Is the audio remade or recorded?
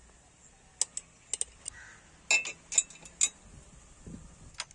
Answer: recorded